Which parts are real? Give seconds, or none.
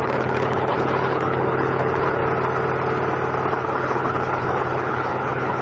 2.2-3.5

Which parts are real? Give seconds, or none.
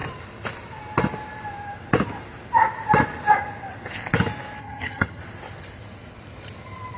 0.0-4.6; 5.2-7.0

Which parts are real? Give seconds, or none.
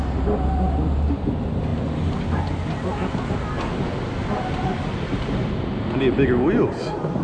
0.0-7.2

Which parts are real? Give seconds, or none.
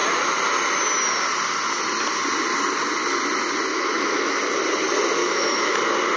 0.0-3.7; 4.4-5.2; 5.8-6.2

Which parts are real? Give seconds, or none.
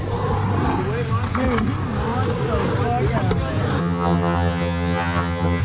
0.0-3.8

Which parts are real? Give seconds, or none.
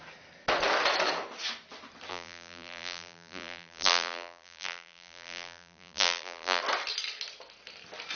0.0-2.1; 6.6-8.2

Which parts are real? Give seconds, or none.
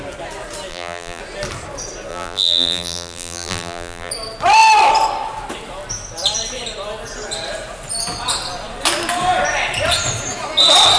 0.0-0.7; 1.2-2.1; 4.1-11.0